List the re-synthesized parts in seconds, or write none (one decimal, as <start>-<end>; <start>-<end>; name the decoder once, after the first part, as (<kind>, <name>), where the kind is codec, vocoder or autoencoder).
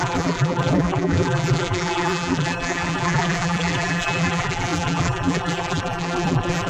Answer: 0.0-6.7 (vocoder, BigVGAN v2)